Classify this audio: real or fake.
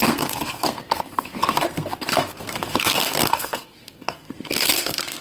fake